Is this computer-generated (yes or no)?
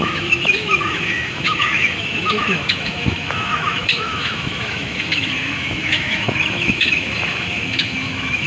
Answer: yes